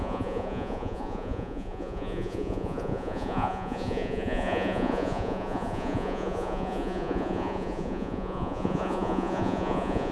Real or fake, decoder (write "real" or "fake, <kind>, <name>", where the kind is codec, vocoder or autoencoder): fake, vocoder, Vocos